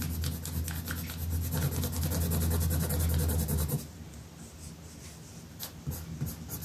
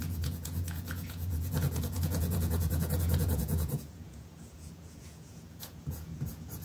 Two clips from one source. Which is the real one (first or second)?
first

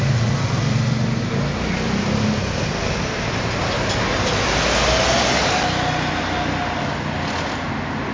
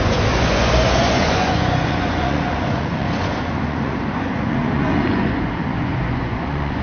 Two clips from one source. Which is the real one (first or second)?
first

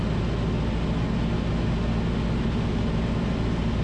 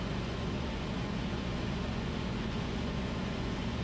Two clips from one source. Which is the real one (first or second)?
first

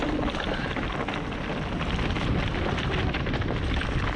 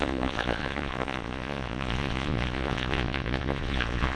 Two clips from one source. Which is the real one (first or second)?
first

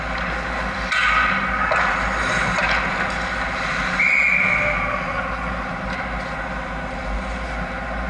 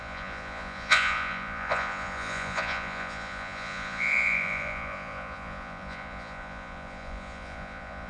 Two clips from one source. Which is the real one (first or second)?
first